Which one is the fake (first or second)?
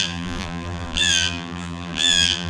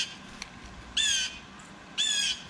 first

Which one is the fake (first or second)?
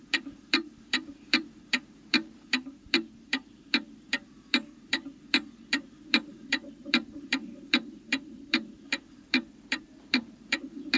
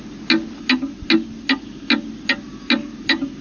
first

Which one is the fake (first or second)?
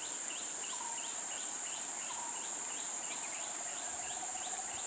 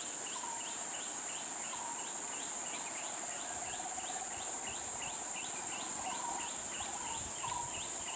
first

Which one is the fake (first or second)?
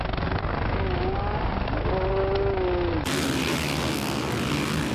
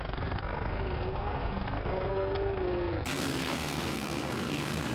second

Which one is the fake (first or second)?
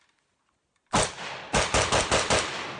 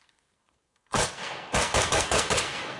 second